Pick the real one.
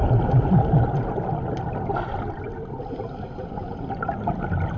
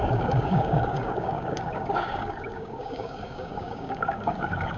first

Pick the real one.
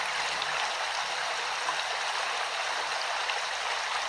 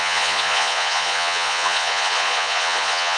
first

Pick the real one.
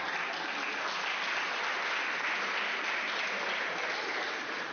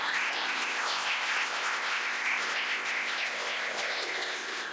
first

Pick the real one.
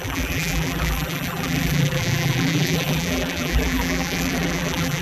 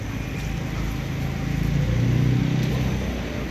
second